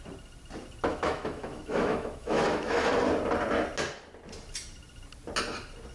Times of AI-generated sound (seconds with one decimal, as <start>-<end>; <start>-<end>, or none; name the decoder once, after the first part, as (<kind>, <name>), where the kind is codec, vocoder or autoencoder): 0.9-2.9 (autoencoder, DAC-VAE)